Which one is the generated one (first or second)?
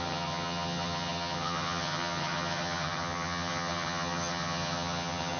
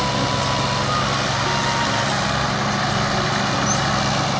first